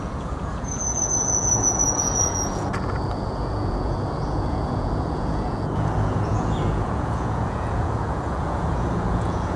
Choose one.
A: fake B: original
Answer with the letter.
A